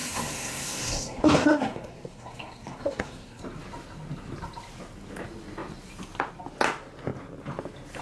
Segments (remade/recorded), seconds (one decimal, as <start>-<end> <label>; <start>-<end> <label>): 0.0-3.4 remade; 3.4-8.0 recorded